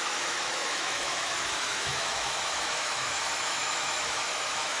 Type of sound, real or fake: fake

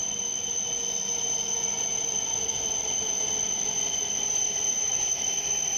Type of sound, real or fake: real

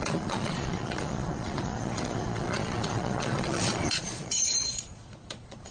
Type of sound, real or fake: fake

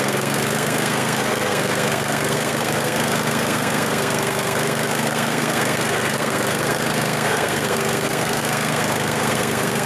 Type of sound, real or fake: fake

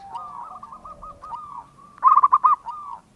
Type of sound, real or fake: real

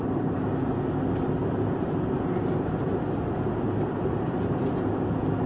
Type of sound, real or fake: real